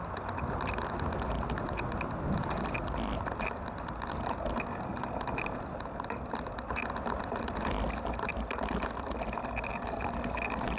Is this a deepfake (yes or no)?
no